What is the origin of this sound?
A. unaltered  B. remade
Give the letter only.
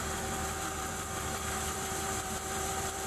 B